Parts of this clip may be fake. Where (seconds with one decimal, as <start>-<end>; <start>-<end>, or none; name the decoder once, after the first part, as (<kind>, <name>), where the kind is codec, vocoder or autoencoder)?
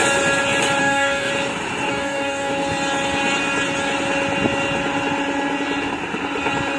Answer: 0.8-1.3 (codec, DAC); 1.9-2.5